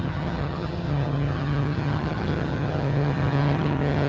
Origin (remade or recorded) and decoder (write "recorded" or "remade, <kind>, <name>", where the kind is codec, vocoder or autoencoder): remade, vocoder, HiFi-GAN